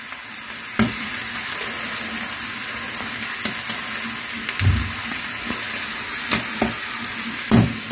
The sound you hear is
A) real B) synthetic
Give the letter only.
A